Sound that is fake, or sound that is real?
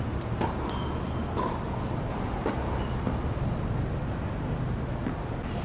real